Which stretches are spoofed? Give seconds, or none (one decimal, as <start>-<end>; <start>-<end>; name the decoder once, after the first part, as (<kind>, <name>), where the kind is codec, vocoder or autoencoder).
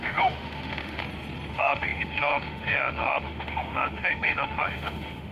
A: 0.0-1.0 (autoencoder, DAC-VAE); 1.5-5.3